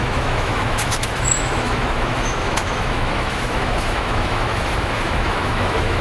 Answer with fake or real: fake